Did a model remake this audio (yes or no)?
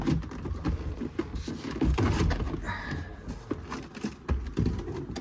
no